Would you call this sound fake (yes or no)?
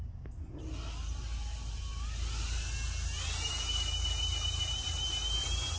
no